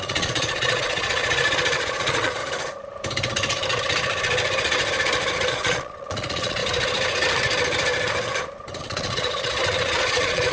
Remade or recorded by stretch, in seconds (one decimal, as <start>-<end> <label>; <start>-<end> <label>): 0.0-2.4 remade; 2.4-5.5 recorded; 5.5-6.6 remade; 6.6-8.8 recorded; 8.8-10.5 remade